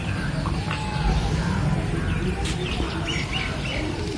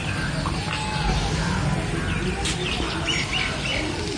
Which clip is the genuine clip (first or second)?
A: second